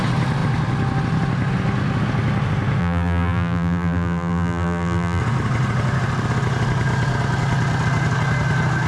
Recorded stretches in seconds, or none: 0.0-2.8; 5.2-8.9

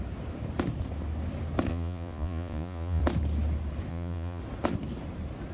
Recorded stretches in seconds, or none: 0.0-1.7; 3.0-3.9; 4.4-5.5